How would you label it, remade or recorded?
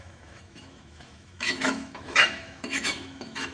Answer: remade